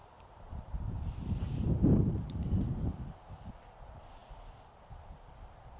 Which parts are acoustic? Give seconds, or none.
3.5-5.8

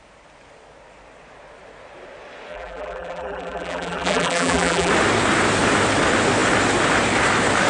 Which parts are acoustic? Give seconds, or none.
0.0-2.5; 4.9-7.7